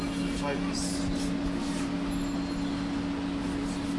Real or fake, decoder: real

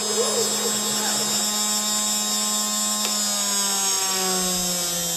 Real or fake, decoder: real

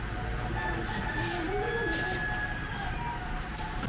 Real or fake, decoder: real